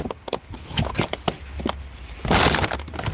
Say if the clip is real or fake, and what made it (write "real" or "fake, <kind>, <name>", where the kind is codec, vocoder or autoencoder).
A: real